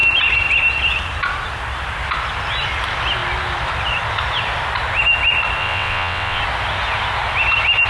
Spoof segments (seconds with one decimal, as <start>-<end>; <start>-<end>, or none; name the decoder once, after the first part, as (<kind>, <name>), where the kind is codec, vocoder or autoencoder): 5.6-6.4 (vocoder, WaveNeXt)